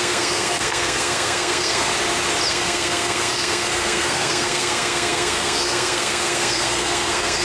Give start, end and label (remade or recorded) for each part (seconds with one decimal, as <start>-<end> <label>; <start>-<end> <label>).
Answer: 0.0-1.9 remade; 1.9-2.5 recorded; 2.5-7.4 remade